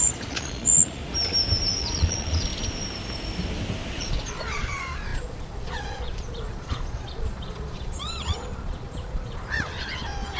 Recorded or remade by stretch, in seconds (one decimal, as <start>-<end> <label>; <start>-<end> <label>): 0.0-1.0 remade; 1.0-1.8 recorded; 1.8-2.5 remade; 2.5-3.9 recorded; 3.9-10.4 remade